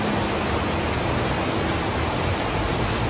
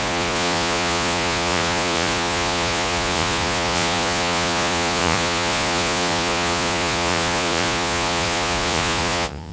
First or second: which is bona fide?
first